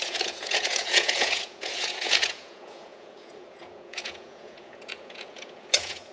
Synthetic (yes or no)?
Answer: yes